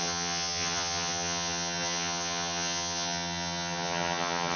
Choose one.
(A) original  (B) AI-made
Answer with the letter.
B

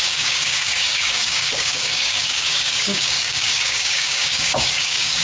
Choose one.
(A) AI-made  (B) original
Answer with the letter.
A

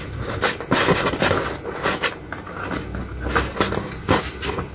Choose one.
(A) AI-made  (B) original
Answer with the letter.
B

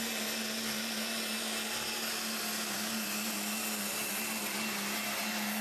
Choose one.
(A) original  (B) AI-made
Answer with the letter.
A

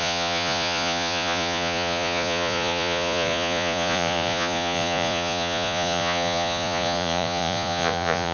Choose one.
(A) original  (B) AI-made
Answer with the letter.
B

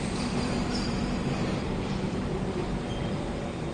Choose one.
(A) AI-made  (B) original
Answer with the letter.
A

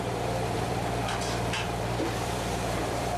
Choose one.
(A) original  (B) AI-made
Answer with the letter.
B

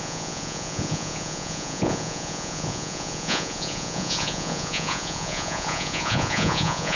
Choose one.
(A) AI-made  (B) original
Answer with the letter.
A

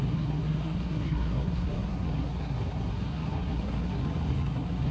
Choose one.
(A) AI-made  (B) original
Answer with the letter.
A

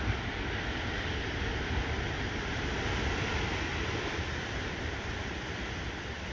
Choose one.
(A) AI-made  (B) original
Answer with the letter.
B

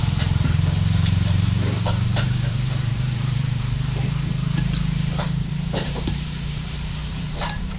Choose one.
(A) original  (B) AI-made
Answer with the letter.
B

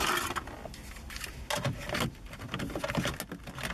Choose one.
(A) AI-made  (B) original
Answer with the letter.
B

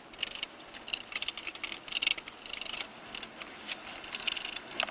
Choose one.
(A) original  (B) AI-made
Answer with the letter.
A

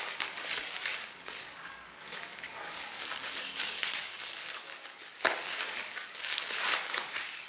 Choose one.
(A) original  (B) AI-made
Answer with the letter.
B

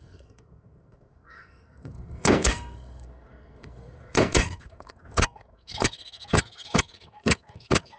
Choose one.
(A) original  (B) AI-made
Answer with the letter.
B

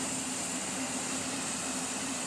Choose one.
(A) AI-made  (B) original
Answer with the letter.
A